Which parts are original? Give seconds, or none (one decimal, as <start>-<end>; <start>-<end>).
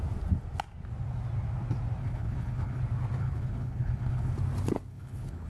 0.0-2.0; 2.8-3.2; 4.3-4.9